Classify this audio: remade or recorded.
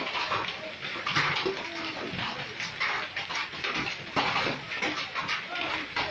recorded